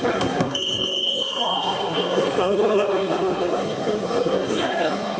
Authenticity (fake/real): fake